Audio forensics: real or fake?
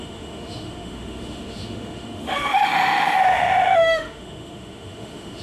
fake